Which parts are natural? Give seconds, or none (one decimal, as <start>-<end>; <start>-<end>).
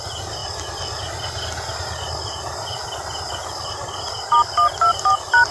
0.0-5.5